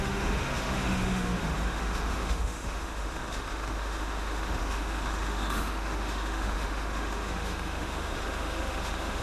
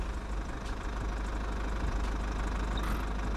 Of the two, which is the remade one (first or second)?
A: first